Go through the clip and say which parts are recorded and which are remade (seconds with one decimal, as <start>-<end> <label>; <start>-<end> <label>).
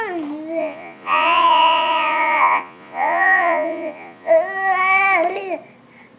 0.0-0.6 recorded; 0.6-4.3 remade; 4.3-6.2 recorded